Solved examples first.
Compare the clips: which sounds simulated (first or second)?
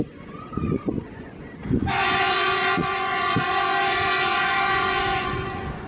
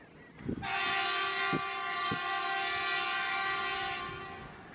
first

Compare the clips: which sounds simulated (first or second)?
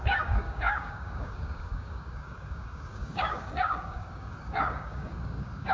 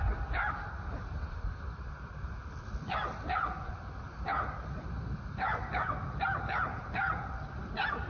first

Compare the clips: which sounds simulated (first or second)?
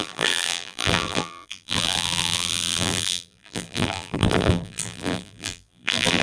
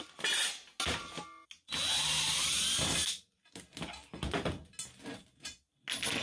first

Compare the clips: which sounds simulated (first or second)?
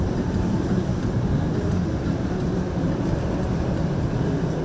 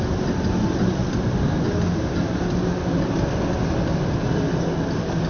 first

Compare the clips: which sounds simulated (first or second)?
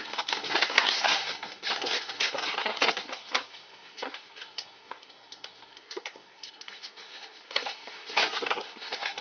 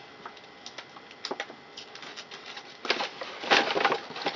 first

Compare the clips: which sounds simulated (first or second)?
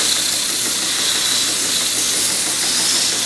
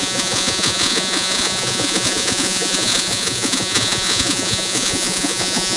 second